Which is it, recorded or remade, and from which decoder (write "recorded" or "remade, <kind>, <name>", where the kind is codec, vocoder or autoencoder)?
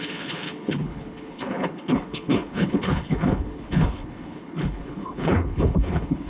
remade, codec, HILCodec